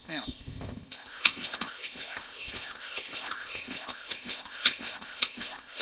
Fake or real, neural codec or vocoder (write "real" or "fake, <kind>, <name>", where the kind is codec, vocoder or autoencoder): fake, codec, ZipCodec